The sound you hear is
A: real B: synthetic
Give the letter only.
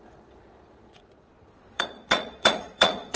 B